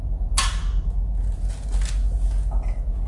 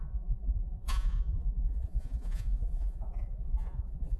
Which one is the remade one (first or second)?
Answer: second